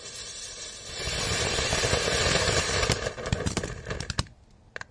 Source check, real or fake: real